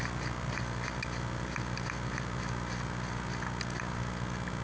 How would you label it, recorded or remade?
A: recorded